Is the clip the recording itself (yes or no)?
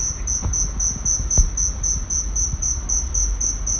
yes